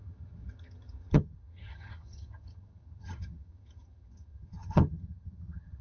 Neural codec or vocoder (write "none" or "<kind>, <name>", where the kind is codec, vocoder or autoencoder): vocoder, HiFi-GAN